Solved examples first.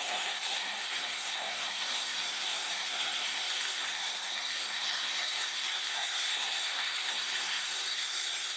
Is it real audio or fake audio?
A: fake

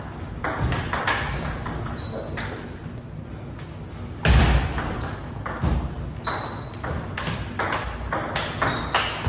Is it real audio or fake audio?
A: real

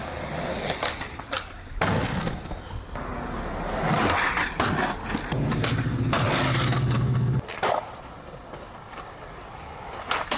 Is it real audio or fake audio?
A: real